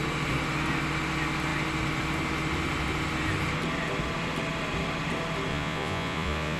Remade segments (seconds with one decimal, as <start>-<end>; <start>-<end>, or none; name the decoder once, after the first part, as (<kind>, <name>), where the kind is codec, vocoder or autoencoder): 5.5-6.6 (vocoder, Vocos)

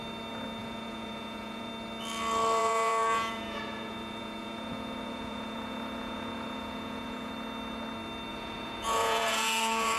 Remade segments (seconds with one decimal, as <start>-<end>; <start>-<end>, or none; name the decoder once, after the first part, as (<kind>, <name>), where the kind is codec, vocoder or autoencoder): 0.6-1.7 (vocoder, Vocos); 2.6-7.3; 8.3-10.0

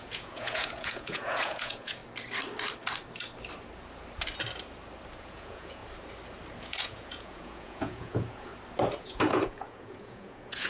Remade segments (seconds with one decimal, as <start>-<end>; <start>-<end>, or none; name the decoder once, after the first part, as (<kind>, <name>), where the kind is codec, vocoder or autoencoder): 0.0-2.0 (vocoder, Vocos); 5.2-5.8; 6.6-8.5; 9.0-10.7

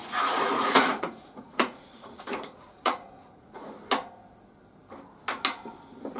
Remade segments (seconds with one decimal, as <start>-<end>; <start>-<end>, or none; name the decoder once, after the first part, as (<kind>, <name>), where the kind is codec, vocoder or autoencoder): 0.0-3.7 (vocoder, Vocos)

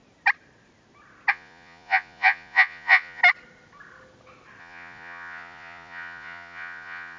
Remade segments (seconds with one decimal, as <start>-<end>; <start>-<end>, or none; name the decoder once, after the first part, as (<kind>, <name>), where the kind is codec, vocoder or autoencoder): 1.3-3.2 (vocoder, Vocos); 4.6-7.2

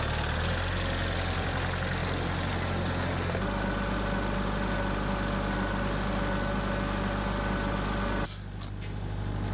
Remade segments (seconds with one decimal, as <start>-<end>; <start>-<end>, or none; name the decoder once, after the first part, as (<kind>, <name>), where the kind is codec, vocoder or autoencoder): none